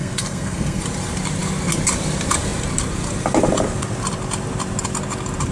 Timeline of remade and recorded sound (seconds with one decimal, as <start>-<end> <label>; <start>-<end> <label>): 0.0-0.8 remade; 0.8-5.5 recorded